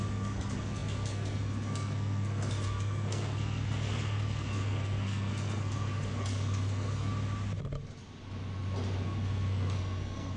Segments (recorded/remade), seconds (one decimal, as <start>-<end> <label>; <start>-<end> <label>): 0.0-7.1 remade; 7.1-9.0 recorded; 9.0-10.4 remade